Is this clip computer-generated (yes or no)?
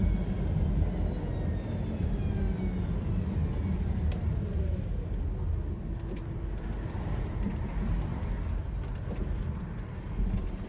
no